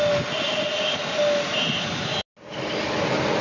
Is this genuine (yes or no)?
yes